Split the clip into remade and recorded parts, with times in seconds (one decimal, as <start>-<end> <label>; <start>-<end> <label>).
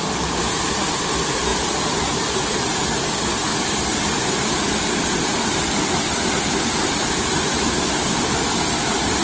0.0-9.2 recorded